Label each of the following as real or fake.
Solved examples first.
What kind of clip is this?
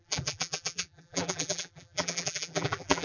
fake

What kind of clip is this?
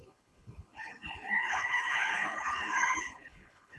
fake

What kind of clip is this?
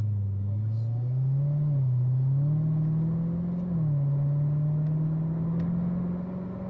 real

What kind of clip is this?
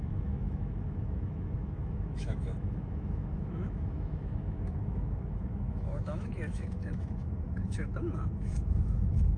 fake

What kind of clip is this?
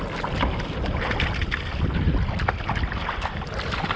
real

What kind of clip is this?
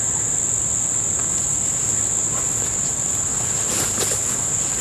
real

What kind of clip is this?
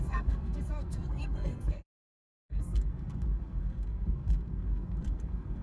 fake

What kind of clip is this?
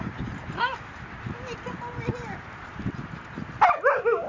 real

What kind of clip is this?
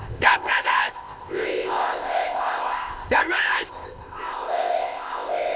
fake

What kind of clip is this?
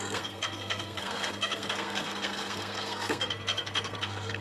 fake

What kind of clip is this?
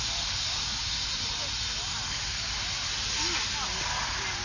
real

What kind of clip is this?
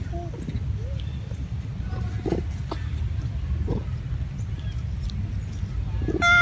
real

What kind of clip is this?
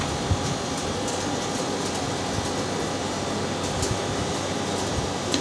real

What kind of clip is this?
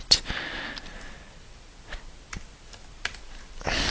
real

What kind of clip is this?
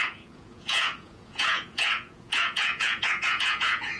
fake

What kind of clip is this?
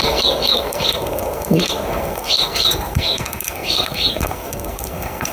fake